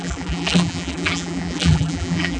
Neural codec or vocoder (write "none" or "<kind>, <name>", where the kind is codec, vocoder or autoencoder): vocoder, BigVGAN v2